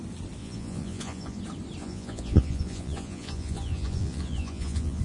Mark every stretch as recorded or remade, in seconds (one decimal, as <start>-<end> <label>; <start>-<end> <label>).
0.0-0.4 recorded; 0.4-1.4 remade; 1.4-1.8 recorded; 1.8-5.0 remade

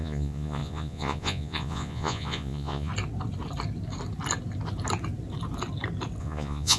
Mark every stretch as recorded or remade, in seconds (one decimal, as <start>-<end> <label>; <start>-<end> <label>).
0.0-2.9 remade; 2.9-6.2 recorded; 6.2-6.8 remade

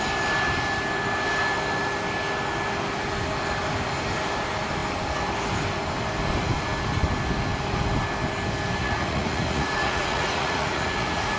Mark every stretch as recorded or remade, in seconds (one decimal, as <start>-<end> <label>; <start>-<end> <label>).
0.0-8.8 recorded; 8.8-11.4 remade

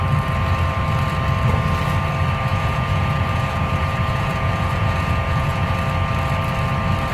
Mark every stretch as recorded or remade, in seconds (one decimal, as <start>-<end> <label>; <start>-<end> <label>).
0.0-2.5 recorded; 2.5-5.7 remade; 5.7-7.1 recorded

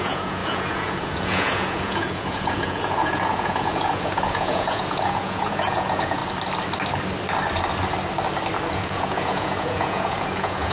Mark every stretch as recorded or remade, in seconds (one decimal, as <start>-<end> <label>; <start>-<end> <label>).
0.0-6.2 remade; 6.2-8.7 recorded; 8.7-10.7 remade